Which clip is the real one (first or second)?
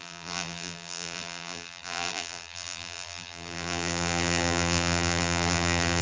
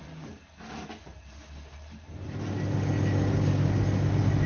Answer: second